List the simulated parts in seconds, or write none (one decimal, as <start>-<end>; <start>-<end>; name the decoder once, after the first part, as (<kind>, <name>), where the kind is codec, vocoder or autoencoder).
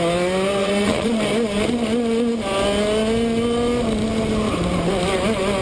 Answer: 0.6-1.1 (vocoder, Vocos)